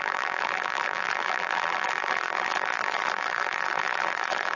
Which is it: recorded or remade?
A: remade